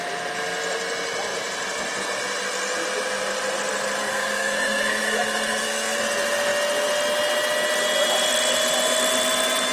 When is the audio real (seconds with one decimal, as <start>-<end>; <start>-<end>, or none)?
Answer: 0.0-4.0; 6.0-9.7